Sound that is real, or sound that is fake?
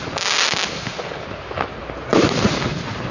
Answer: real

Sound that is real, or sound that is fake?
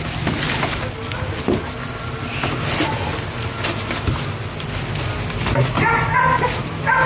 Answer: real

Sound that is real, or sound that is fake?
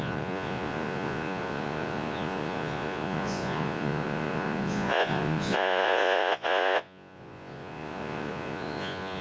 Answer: fake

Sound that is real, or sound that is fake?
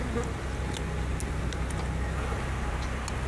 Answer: real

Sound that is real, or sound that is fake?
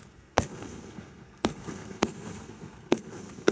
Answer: fake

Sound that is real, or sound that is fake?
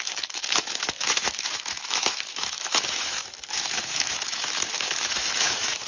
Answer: fake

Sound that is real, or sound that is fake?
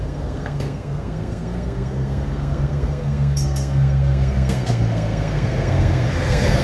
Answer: fake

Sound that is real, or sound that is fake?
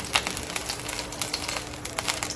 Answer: real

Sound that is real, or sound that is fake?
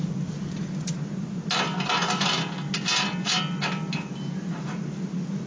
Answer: real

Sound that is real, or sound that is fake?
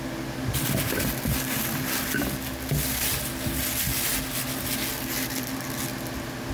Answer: real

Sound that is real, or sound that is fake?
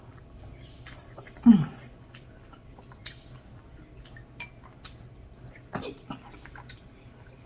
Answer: real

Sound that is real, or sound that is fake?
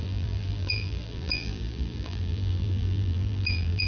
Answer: fake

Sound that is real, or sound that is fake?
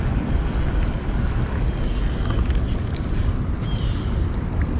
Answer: real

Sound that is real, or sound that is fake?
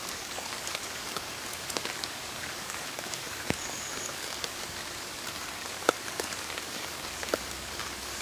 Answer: fake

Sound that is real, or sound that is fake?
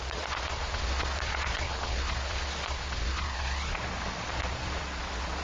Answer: fake